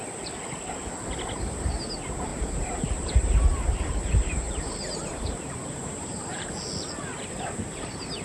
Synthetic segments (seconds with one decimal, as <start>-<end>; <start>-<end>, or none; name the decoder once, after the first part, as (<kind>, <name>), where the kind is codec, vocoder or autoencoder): 2.3-6.5 (vocoder, BigVGAN v2)